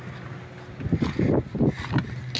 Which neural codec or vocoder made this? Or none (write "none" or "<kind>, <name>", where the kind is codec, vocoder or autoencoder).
none